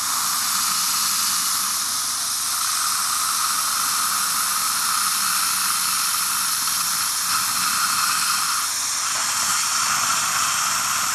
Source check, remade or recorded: recorded